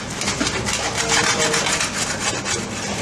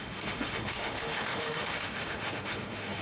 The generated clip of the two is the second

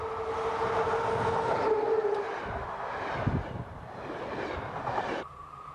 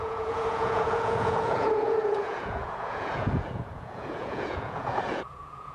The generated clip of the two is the second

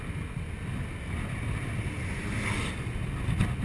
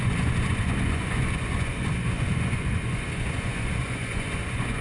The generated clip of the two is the second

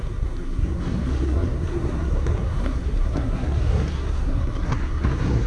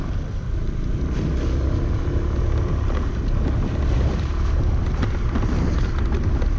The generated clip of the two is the first